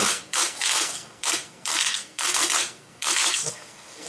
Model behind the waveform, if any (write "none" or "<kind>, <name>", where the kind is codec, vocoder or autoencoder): codec, SNAC